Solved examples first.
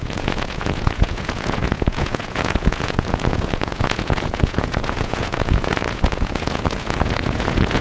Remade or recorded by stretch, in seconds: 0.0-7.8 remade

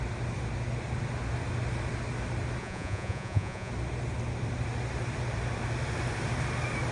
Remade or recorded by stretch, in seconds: 0.0-2.6 recorded; 2.6-3.7 remade; 3.7-6.9 recorded